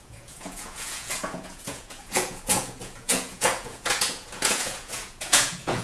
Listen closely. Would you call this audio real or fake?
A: fake